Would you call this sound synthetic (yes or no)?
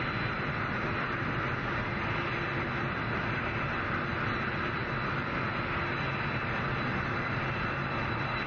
no